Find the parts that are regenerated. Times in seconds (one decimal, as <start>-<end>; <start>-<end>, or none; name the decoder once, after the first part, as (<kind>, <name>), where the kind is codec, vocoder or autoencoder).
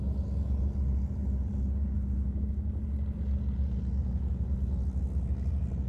none